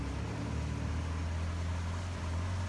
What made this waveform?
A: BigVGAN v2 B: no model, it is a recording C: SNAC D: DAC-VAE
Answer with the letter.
B